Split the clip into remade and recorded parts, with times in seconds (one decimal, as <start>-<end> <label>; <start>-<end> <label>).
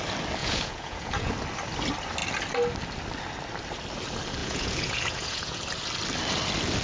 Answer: 0.0-0.4 recorded; 0.4-1.3 remade; 1.3-4.4 recorded; 4.4-5.6 remade; 5.6-6.8 recorded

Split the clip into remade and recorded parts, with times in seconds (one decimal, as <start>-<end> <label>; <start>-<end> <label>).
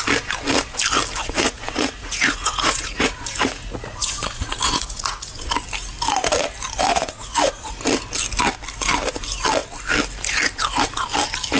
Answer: 0.0-1.2 recorded; 1.2-5.5 remade; 5.5-6.9 recorded; 6.9-7.7 remade; 7.7-11.6 recorded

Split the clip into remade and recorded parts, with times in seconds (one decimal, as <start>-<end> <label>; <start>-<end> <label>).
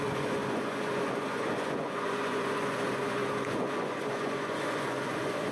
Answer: 0.0-5.5 remade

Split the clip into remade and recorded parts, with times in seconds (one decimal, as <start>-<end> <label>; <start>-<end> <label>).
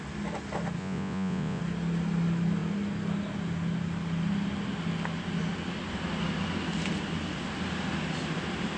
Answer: 0.0-0.8 recorded; 0.8-1.6 remade; 1.6-8.8 recorded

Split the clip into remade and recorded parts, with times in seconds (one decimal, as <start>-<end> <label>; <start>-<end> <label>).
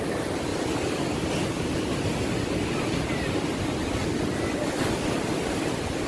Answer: 0.0-6.1 recorded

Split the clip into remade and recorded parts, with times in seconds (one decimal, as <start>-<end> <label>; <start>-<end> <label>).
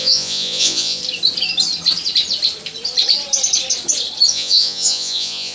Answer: 0.0-1.0 remade; 1.0-4.3 recorded; 4.3-5.5 remade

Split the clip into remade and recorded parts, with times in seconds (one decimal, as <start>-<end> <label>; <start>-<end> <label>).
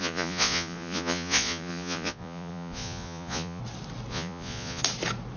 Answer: 0.0-3.6 remade; 3.6-4.1 recorded; 4.1-4.8 remade; 4.8-5.4 recorded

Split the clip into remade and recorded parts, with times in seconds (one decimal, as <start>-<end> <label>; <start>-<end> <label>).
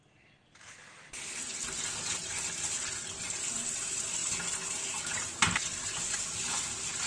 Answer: 0.0-7.1 recorded